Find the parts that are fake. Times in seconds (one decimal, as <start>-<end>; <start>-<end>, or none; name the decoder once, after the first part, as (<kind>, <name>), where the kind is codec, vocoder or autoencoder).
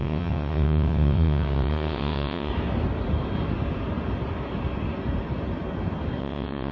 0.0-2.5 (vocoder, WaveNeXt); 6.2-6.7